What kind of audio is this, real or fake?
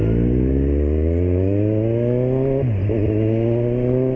real